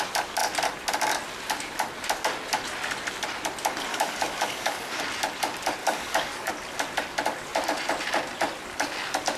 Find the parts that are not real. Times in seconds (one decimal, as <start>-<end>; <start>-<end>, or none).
3.9-5.0; 5.8-6.5

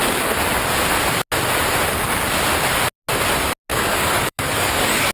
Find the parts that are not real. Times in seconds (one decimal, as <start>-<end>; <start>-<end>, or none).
3.7-5.1

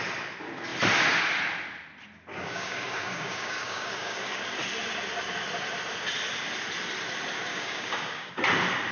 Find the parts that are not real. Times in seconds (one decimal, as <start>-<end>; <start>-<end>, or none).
2.3-4.4; 7.5-8.3

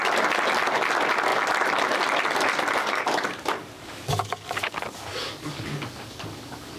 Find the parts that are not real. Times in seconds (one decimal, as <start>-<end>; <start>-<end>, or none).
2.8-6.8

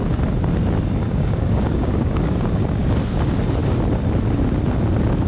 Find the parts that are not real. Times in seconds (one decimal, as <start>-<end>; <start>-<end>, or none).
1.0-3.0